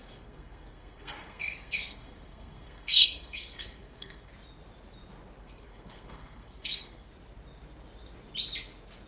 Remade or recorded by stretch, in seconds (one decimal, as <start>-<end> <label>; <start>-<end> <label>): 0.0-4.3 remade; 4.3-5.4 recorded; 5.4-7.1 remade; 7.1-9.1 recorded